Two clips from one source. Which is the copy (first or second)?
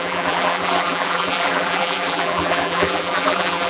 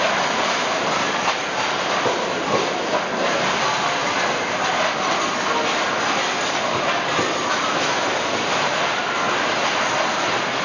first